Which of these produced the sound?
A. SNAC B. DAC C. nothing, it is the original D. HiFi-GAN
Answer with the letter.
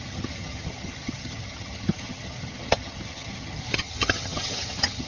D